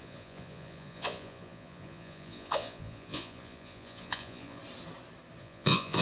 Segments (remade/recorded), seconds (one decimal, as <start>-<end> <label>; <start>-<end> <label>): 0.0-4.6 remade; 4.6-5.4 recorded; 5.4-6.0 remade